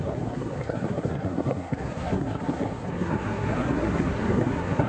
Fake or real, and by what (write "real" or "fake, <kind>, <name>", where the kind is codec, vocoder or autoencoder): fake, codec, SNAC